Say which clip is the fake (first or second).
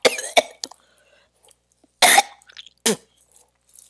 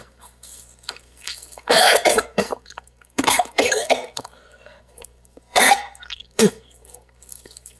second